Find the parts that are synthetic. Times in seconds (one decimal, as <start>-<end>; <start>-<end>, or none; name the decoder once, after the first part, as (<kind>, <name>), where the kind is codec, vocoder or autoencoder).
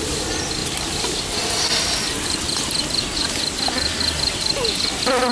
none